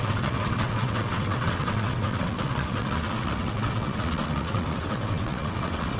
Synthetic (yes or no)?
yes